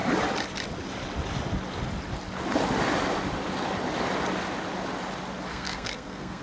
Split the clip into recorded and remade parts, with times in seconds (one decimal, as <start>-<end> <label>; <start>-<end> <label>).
0.0-5.5 recorded; 5.5-6.4 remade